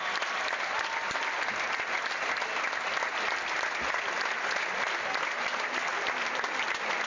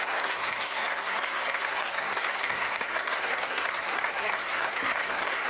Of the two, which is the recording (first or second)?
first